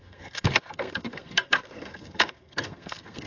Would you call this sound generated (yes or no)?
yes